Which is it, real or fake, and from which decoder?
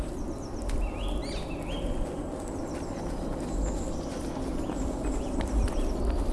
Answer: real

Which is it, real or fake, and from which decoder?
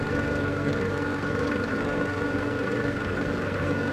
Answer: fake, codec, SNAC